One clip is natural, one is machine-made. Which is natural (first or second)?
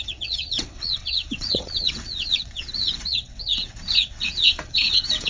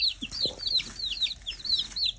second